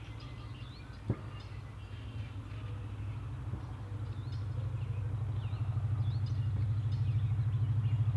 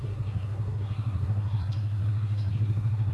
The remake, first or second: second